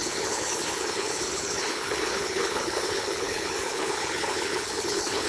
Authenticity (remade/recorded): remade